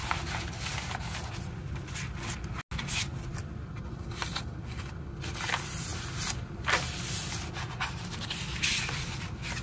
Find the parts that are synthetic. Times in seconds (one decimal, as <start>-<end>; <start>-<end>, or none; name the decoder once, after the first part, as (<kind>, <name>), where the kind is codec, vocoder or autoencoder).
none